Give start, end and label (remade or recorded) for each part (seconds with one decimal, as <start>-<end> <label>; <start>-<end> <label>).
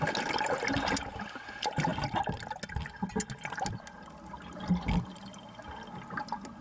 0.0-6.6 recorded